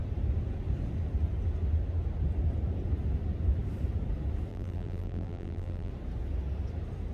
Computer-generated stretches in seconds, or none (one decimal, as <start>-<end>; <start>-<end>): 4.5-5.9